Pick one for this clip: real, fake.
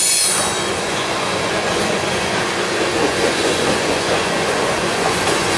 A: fake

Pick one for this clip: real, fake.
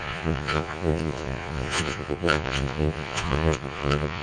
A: fake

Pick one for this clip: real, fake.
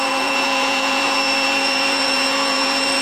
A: fake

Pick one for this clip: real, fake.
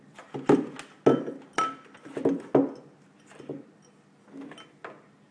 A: real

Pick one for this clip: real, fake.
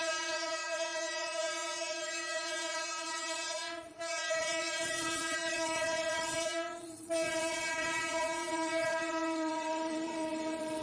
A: fake